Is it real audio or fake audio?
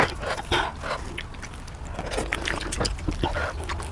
real